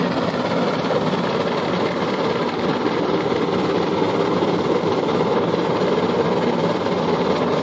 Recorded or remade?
recorded